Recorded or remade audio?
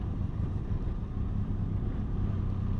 recorded